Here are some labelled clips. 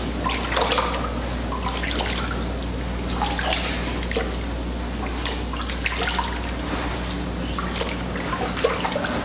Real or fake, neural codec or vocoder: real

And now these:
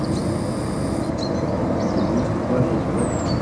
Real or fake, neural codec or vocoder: real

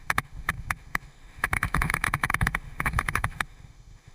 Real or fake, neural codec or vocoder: fake, autoencoder, DAC-VAE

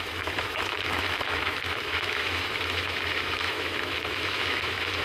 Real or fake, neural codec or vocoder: fake, autoencoder, DAC-VAE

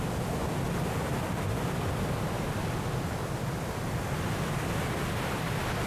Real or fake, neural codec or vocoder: real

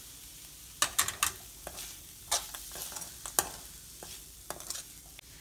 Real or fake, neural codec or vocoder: real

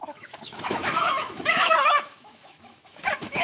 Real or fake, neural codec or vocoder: fake, autoencoder, DAC-VAE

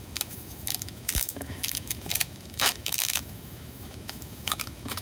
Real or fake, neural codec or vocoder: fake, autoencoder, DAC-VAE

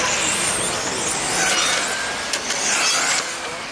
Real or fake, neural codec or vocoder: real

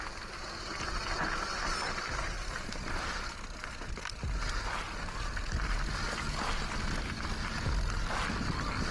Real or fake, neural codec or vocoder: real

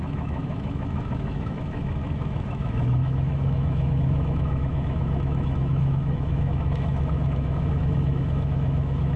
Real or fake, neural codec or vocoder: fake, autoencoder, DAC-VAE